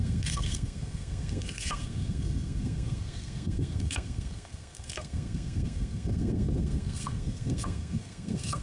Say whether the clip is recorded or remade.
remade